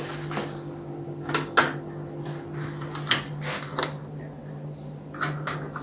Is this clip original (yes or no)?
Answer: yes